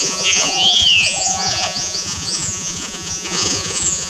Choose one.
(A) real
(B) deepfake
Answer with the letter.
B